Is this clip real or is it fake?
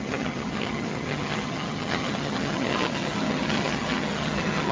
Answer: fake